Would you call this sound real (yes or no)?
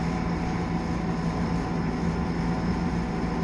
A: yes